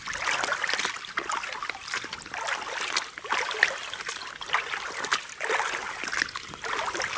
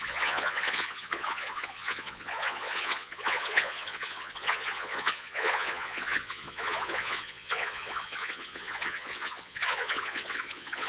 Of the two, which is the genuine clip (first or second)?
first